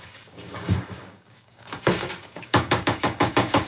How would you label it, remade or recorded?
remade